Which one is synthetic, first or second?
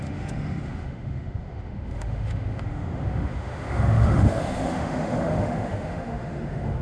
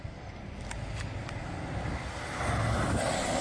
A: first